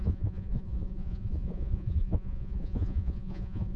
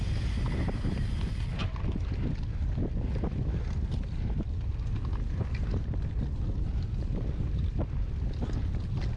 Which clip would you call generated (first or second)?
first